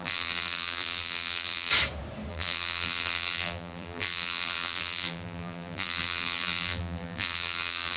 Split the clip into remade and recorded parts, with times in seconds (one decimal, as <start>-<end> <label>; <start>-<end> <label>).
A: 0.0-1.7 remade; 1.7-2.3 recorded; 2.3-8.0 remade